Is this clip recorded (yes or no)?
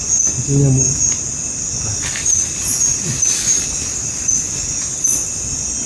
yes